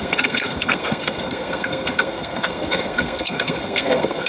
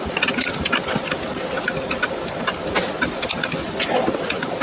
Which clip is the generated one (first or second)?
first